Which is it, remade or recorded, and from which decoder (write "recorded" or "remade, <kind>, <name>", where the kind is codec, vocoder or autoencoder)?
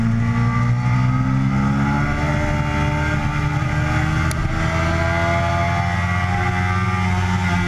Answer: recorded